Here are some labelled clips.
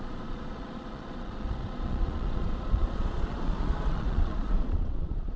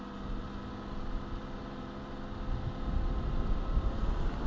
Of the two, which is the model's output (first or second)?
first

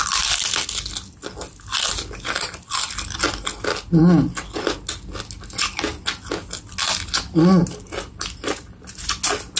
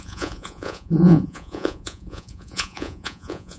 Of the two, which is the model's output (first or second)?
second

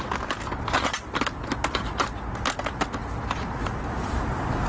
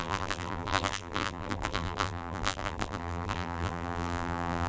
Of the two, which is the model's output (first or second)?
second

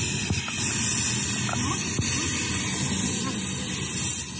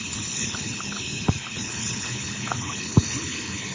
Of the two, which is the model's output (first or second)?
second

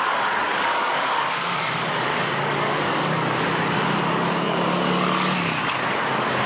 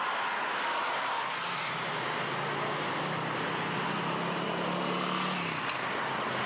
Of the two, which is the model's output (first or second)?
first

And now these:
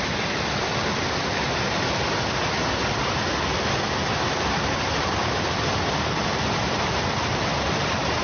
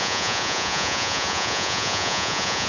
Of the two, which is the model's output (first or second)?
second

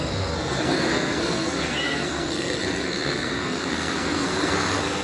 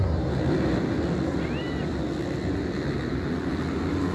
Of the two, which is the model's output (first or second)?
first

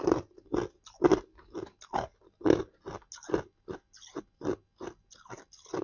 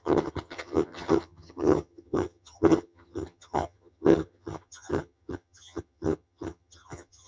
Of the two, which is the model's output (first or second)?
second